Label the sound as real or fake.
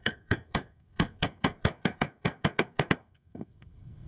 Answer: fake